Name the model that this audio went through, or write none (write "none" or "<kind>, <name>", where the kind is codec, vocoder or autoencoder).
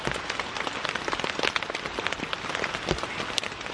none